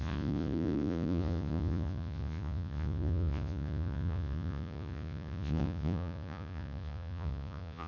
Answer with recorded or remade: remade